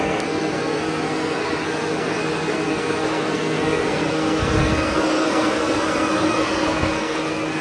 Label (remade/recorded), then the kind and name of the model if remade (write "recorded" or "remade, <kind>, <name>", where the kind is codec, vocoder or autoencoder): remade, codec, SNAC